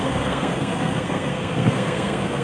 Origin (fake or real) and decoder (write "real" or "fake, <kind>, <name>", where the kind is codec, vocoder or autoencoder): fake, codec, SNAC